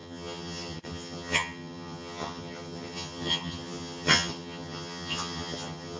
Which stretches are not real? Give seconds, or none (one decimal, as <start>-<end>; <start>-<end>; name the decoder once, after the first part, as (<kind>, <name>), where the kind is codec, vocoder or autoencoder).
0.0-6.0 (vocoder, HiFi-GAN)